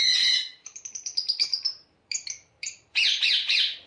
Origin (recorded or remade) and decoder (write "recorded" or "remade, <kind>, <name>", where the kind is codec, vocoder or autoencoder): remade, vocoder, BigVGAN v2